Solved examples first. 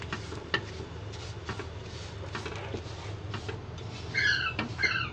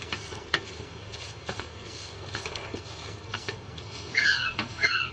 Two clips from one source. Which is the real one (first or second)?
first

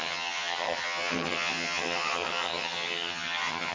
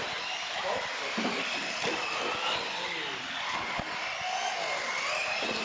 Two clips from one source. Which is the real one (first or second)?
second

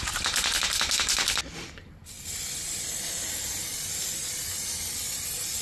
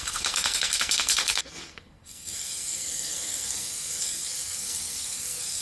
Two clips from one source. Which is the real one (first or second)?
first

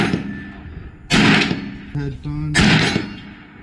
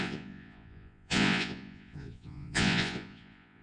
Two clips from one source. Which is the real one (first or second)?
first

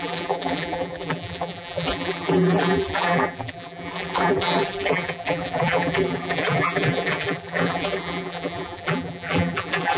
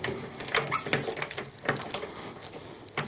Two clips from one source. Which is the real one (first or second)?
second